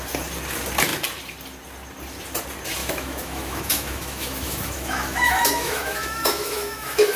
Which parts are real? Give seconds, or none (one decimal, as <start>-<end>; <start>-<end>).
0.0-2.8